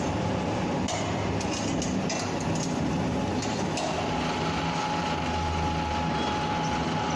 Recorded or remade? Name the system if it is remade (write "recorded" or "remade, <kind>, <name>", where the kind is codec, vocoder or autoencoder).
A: recorded